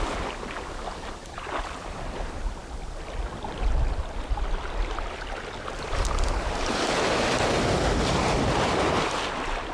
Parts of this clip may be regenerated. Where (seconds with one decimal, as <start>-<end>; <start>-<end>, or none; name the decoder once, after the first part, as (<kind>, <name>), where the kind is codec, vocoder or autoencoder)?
none